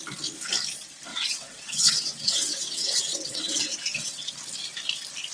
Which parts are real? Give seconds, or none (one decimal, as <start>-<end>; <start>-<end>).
0.0-1.1; 4.3-5.3